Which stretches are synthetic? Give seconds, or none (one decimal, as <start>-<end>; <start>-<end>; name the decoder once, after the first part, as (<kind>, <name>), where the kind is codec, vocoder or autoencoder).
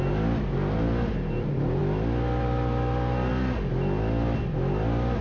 none